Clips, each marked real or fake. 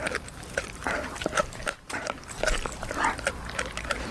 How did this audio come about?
real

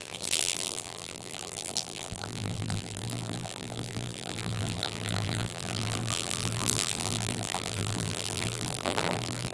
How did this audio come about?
fake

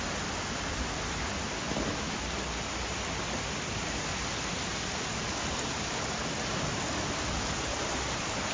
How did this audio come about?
real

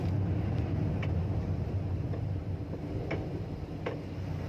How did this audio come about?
real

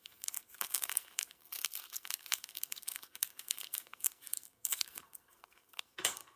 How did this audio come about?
fake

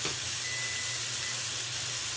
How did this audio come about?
real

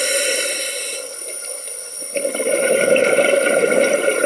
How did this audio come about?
real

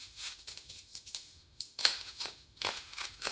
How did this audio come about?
fake